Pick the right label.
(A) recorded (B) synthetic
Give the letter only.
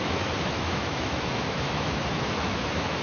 B